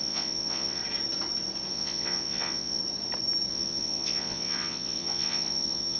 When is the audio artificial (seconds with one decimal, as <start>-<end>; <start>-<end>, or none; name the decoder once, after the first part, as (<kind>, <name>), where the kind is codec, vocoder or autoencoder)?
0.0-0.8 (vocoder, Vocos); 1.7-2.8; 3.5-6.0